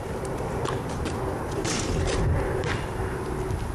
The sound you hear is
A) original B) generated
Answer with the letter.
B